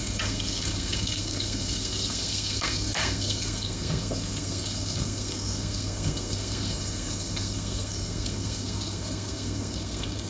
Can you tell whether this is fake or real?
fake